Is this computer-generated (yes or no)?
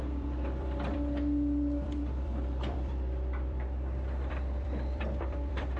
yes